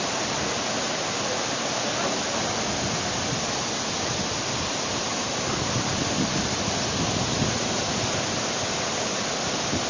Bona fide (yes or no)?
yes